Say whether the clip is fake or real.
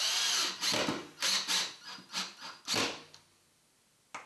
real